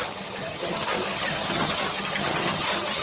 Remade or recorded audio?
remade